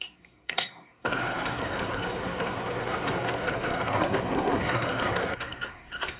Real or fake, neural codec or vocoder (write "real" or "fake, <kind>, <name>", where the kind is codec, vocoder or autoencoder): fake, codec, SNAC